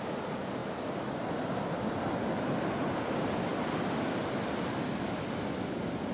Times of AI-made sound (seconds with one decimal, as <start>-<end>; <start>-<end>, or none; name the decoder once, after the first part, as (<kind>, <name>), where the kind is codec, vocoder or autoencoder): none